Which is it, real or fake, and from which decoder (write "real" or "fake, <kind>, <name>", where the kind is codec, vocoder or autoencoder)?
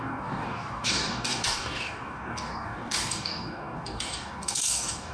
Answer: fake, codec, DAC